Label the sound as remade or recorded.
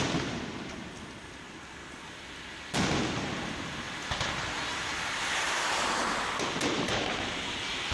recorded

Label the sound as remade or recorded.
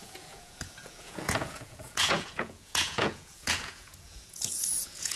remade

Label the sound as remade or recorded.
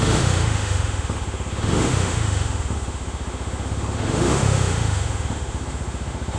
remade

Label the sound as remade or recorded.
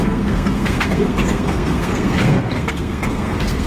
remade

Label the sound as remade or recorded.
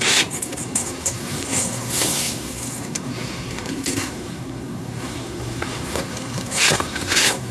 remade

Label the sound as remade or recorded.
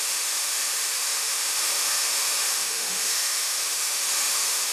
remade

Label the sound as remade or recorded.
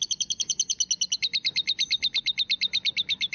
recorded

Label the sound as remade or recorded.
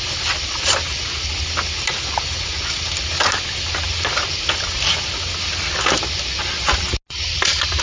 recorded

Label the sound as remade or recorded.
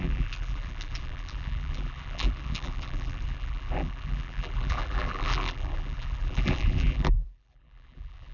remade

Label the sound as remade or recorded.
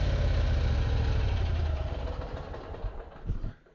recorded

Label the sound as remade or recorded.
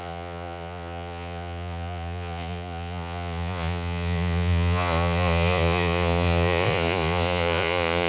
remade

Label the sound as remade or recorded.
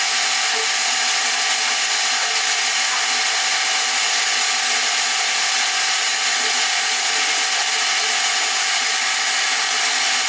recorded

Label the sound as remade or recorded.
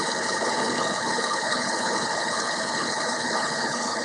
remade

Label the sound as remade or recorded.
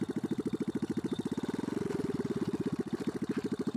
recorded